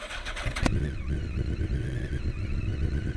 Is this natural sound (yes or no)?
no